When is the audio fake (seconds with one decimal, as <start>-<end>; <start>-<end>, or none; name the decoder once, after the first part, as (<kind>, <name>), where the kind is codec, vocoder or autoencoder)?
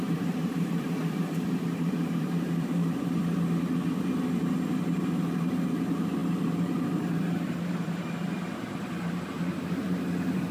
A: 0.0-3.2 (vocoder, BigVGAN v2); 5.0-10.5